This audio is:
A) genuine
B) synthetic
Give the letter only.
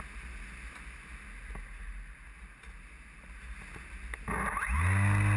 A